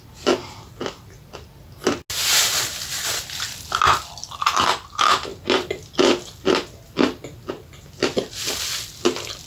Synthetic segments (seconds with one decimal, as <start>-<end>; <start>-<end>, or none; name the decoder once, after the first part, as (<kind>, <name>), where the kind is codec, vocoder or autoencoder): none